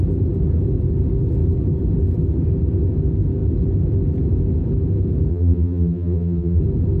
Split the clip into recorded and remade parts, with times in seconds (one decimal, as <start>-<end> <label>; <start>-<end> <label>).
0.0-5.3 recorded; 5.3-6.6 remade; 6.6-7.0 recorded